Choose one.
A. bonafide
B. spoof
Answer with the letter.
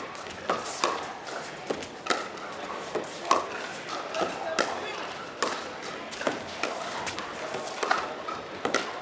A